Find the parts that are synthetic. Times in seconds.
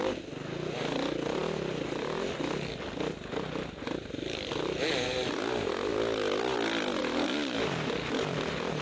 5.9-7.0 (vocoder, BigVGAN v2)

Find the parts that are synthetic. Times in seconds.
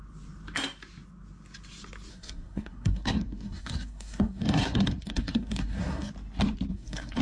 2.1-6.1 (codec, SNAC); 6.7-7.2